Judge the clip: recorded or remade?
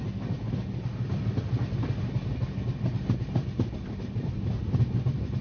recorded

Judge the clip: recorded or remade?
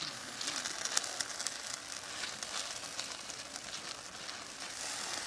recorded